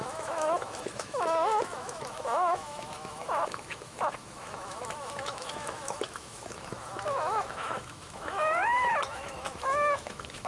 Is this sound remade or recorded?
remade